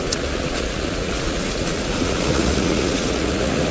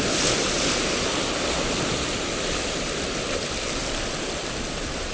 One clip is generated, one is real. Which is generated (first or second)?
first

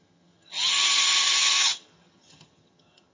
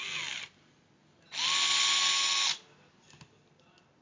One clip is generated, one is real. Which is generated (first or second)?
first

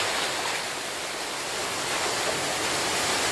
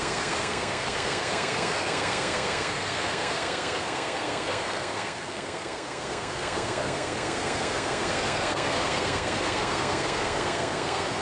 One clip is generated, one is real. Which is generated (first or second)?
second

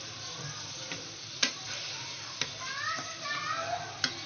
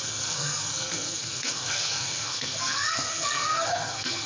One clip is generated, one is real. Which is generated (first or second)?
second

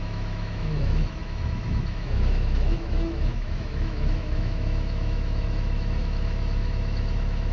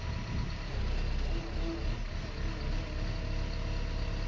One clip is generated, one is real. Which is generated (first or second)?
first